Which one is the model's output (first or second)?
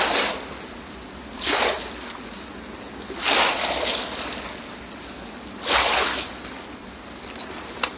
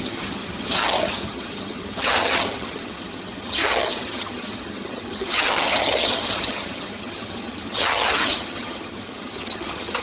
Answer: second